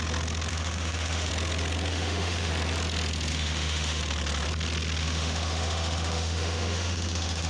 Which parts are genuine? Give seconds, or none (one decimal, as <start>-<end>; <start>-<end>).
0.0-0.5; 1.3-1.9; 2.5-3.3; 4.0-5.0